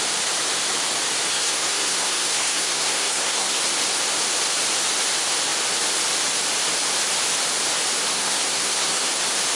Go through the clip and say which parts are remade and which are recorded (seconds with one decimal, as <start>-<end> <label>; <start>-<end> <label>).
0.0-1.3 recorded; 1.3-3.6 remade; 3.6-8.1 recorded; 8.1-9.1 remade; 9.1-9.6 recorded